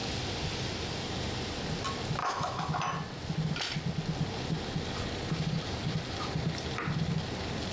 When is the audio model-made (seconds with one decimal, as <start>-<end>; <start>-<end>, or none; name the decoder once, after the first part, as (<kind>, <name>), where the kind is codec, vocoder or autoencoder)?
2.2-2.7 (autoencoder, DAC-VAE)